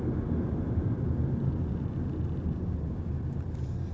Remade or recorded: recorded